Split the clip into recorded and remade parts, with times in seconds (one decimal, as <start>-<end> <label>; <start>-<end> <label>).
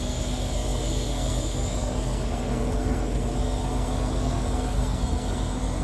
0.0-5.8 remade